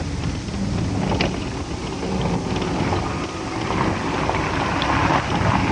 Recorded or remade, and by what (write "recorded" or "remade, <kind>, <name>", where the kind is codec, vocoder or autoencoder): recorded